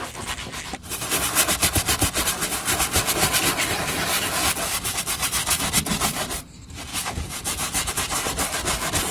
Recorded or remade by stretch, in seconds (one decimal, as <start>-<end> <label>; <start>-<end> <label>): 0.0-6.9 recorded; 6.9-7.9 remade; 7.9-9.1 recorded